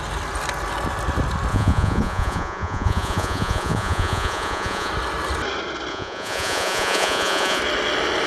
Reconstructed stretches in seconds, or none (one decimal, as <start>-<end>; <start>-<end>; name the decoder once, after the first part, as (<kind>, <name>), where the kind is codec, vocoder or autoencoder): 1.5-4.9 (vocoder, Vocos); 5.9-7.6